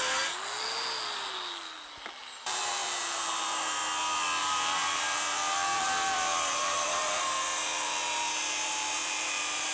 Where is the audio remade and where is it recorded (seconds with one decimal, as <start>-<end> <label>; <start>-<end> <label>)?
0.0-2.2 recorded; 2.2-3.8 remade; 3.8-4.4 recorded; 4.4-9.7 remade